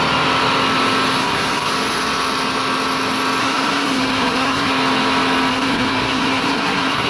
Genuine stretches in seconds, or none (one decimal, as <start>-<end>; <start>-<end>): 0.0-1.2; 1.7-3.4; 4.7-5.5